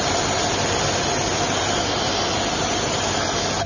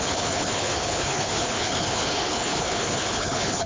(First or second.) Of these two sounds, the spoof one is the second